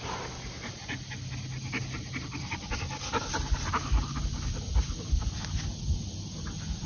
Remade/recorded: recorded